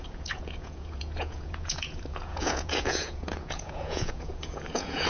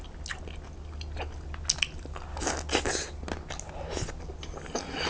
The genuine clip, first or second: second